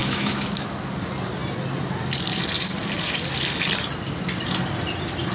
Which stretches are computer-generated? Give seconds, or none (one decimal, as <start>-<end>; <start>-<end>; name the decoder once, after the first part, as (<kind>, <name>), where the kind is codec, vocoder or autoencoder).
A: 0.0-0.7 (autoencoder, DAC-VAE)